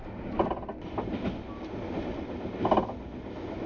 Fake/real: real